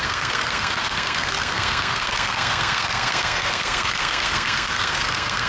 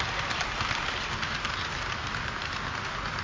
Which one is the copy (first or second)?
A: first